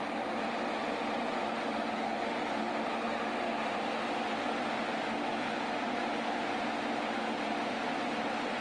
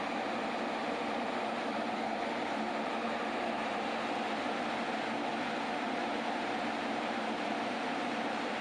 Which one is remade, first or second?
second